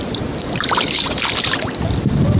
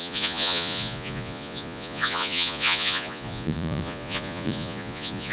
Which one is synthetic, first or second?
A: second